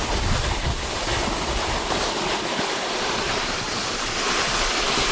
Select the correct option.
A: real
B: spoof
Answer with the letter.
A